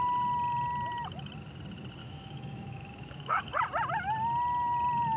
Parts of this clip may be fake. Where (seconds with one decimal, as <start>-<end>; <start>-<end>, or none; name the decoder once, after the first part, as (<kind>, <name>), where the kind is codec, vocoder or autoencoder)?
2.0-3.5 (autoencoder, DAC-VAE)